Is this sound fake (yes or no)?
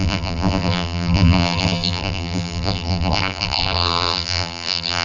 yes